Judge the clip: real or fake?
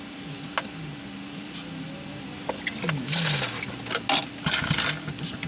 real